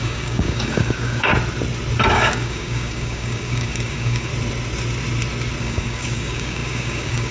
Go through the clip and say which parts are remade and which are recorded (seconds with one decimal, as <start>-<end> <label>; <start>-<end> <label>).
0.0-1.3 remade; 1.3-2.1 recorded; 2.1-4.3 remade; 4.3-5.6 recorded; 5.6-7.3 remade